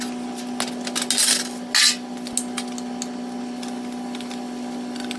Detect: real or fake real